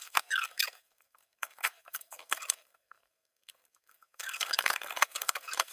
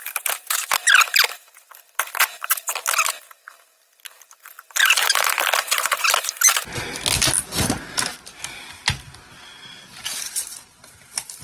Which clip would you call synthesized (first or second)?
first